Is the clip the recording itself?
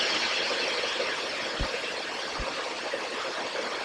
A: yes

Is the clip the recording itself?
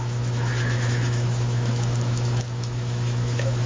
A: no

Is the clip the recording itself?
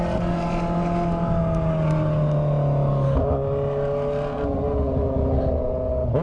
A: yes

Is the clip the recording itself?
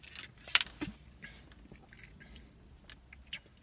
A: yes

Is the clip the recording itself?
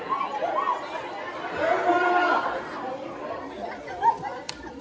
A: yes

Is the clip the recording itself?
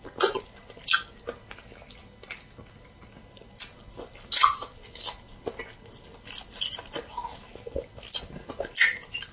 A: yes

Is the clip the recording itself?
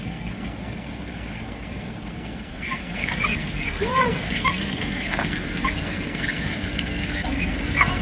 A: no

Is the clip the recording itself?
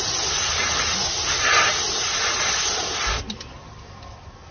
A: yes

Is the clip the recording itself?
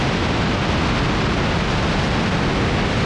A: yes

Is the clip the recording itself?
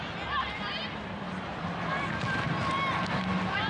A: yes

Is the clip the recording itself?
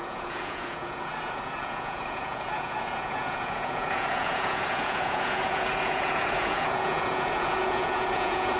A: no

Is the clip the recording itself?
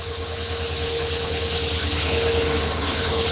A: no